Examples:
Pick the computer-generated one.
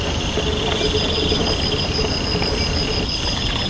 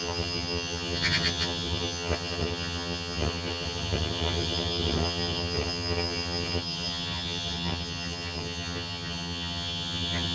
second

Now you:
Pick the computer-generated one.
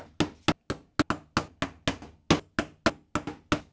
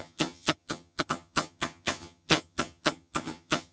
second